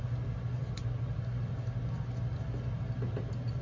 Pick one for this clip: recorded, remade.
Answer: recorded